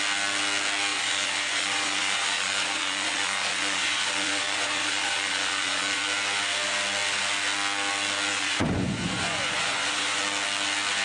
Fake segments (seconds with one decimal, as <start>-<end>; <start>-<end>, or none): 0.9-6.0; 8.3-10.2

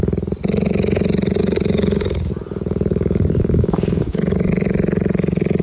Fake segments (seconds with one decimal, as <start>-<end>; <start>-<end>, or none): 1.4-2.3; 2.9-4.5

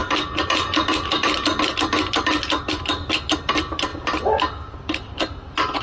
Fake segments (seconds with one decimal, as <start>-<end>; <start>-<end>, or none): none

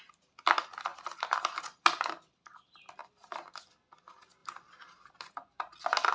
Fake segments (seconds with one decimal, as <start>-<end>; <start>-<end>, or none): none